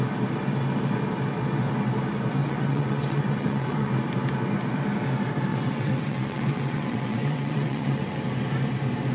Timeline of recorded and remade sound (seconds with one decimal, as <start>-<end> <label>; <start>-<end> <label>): 0.0-2.4 recorded; 2.4-3.9 remade; 3.9-5.5 recorded; 5.5-8.2 remade; 8.2-9.1 recorded